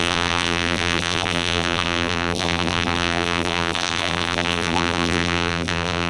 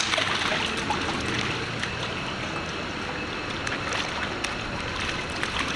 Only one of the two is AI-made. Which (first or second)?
first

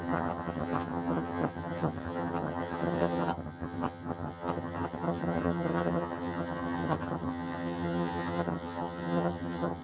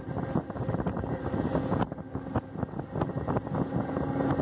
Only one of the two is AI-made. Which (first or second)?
first